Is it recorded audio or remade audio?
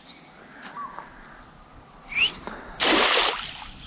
recorded